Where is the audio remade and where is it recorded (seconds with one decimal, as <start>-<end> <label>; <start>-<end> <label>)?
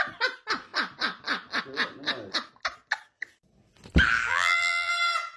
0.0-4.3 recorded; 4.3-4.9 remade; 4.9-5.4 recorded